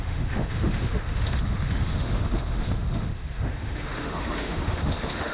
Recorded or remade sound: remade